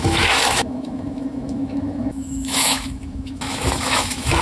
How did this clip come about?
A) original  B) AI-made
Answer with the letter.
B